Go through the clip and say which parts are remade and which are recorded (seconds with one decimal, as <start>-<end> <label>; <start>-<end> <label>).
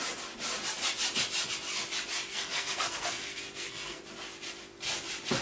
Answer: 0.0-2.3 recorded; 2.3-4.0 remade; 4.0-5.4 recorded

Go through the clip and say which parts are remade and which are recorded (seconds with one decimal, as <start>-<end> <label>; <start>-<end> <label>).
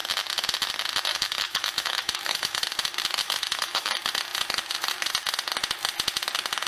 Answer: 0.0-1.1 recorded; 1.1-2.6 remade; 2.6-3.2 recorded; 3.2-3.9 remade; 3.9-6.7 recorded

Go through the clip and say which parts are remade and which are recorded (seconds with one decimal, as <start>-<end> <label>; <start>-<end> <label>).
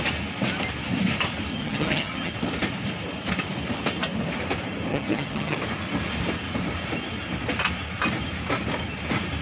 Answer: 0.0-1.5 recorded; 1.5-2.3 remade; 2.3-4.9 recorded; 4.9-5.6 remade; 5.6-9.4 recorded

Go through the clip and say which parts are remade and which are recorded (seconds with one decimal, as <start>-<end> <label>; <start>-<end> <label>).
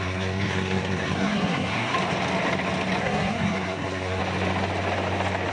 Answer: 0.0-1.9 remade; 1.9-3.0 recorded; 3.0-4.2 remade; 4.2-5.5 recorded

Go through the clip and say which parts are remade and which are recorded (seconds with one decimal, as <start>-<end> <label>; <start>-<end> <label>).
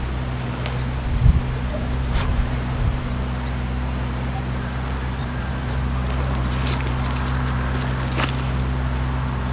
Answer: 0.0-1.7 recorded; 1.7-3.0 remade; 3.0-5.2 recorded; 5.2-6.9 remade; 6.9-9.5 recorded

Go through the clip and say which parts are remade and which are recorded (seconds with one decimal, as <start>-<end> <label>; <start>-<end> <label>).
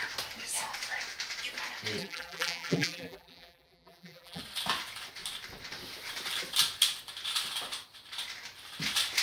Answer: 0.0-2.0 recorded; 2.0-4.4 remade; 4.4-9.2 recorded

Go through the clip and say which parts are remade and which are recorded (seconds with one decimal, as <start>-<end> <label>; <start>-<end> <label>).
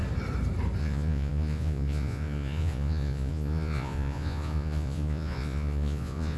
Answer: 0.0-0.8 recorded; 0.8-6.4 remade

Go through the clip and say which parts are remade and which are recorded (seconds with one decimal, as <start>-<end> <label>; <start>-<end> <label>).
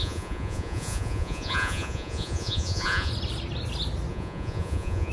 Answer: 0.0-3.1 remade; 3.1-4.1 recorded; 4.1-5.1 remade